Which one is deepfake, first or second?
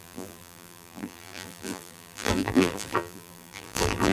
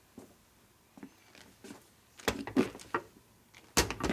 first